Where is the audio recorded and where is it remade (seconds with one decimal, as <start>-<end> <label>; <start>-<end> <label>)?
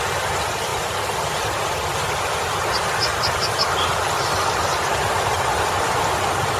0.0-4.7 recorded; 4.7-5.5 remade; 5.5-6.6 recorded